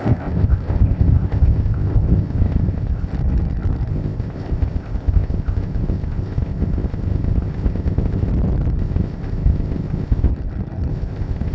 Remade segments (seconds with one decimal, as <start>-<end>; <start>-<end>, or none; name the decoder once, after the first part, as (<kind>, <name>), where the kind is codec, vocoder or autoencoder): 0.0-3.1 (codec, ZipCodec); 3.9-8.3; 8.8-10.3; 10.9-11.5